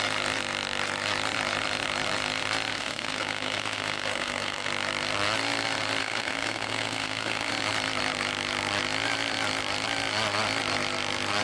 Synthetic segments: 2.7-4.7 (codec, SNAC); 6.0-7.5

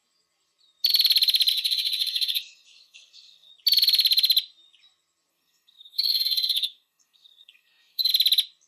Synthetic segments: 1.5-3.5 (codec, SNAC); 5.3-8.1

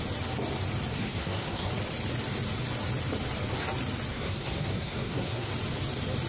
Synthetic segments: 0.9-1.7 (codec, SNAC); 4.1-5.5

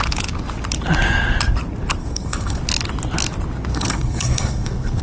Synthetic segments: 2.0-2.6 (codec, SNAC); 3.7-5.0